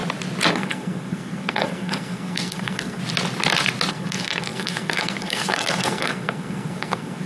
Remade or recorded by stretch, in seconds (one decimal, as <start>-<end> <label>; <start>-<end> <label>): 0.0-0.5 recorded; 0.5-3.0 remade; 3.0-3.9 recorded; 3.9-7.3 remade